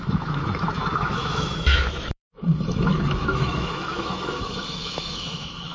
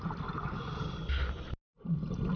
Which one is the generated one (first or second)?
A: first